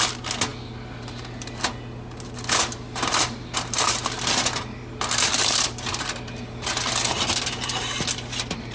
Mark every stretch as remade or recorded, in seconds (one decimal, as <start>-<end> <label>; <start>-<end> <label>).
0.0-8.7 recorded